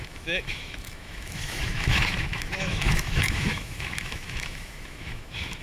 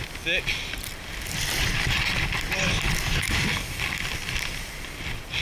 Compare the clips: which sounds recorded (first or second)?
second